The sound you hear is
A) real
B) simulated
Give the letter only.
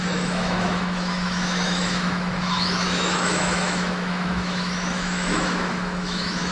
B